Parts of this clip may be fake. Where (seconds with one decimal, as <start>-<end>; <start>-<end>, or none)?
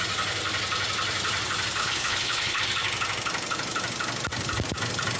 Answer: 1.8-2.6